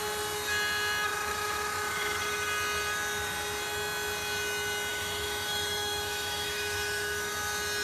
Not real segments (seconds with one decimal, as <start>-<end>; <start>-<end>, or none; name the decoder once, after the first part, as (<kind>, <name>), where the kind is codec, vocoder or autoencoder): 1.1-2.2 (autoencoder, DAC-VAE); 4.9-7.3